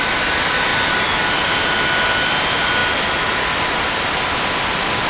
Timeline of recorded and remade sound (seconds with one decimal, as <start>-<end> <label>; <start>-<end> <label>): 0.0-5.1 recorded